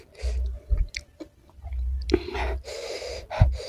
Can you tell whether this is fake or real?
real